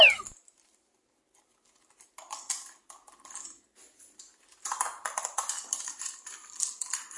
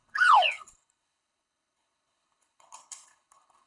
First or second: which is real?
first